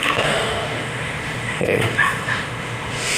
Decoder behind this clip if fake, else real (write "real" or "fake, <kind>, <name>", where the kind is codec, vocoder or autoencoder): fake, autoencoder, DAC-VAE